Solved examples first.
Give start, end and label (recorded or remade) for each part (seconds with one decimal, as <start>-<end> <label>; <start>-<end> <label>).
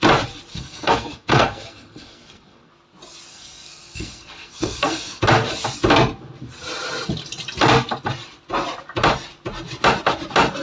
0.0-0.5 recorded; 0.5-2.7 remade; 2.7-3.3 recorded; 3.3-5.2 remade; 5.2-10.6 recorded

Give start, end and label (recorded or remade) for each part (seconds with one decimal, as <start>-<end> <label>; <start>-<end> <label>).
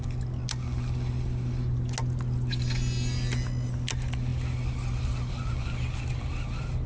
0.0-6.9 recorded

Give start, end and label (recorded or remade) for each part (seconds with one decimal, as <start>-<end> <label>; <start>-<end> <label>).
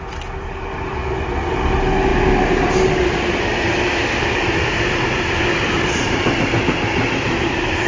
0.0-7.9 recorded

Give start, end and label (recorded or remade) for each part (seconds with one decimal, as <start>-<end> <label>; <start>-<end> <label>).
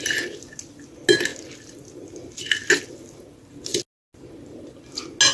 0.0-5.3 recorded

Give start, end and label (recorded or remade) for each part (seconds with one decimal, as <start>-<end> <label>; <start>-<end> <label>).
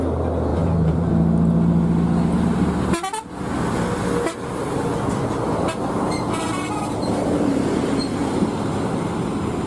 0.0-0.5 recorded; 0.5-1.1 remade; 1.1-6.4 recorded; 6.4-8.4 remade; 8.4-9.7 recorded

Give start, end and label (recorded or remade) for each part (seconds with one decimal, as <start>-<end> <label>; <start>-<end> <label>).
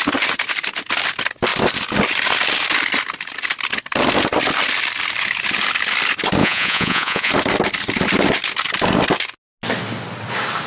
0.0-6.4 recorded; 6.4-7.3 remade; 7.3-10.7 recorded